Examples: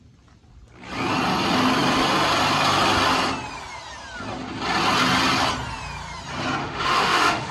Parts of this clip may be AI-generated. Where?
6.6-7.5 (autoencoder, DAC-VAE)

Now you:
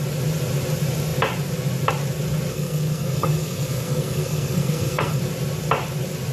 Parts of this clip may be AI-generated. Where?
2.5-5.2 (codec, SNAC)

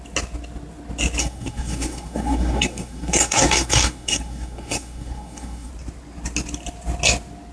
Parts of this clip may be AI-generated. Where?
1.2-5.7 (codec, SNAC)

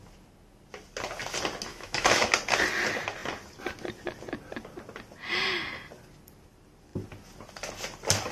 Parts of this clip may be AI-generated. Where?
1.7-2.3 (autoencoder, DAC-VAE)

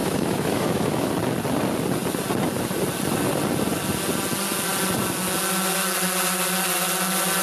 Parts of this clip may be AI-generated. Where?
0.0-1.1 (autoencoder, DAC-VAE)

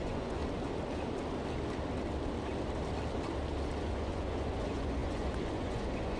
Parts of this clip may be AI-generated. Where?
0.0-0.4 (vocoder, Vocos); 3.8-6.2

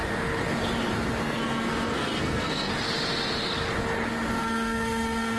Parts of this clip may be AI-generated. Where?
1.2-2.7 (codec, SNAC); 4.4-5.4

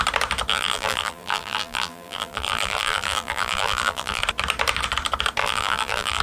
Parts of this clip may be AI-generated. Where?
0.5-4.2 (vocoder, BigVGAN v2); 5.4-6.2